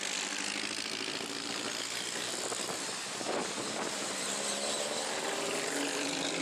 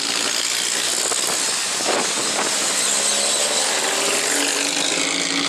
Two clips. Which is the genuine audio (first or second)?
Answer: second